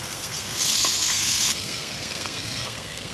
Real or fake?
fake